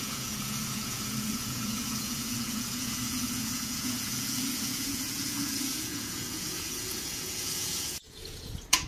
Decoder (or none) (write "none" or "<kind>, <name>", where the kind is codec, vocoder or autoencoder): vocoder, Vocos